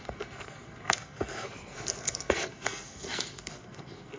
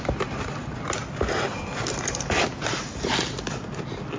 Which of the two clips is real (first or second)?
second